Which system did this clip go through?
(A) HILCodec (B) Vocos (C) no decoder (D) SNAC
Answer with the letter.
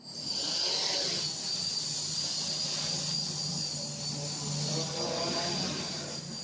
C